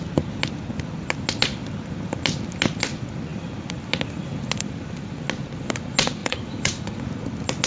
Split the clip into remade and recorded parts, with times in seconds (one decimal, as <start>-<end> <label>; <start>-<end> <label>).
0.0-6.2 recorded; 6.2-7.0 remade; 7.0-7.7 recorded